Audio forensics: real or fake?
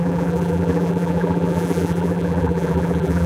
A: fake